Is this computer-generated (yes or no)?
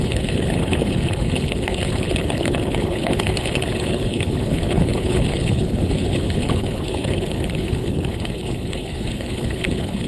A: yes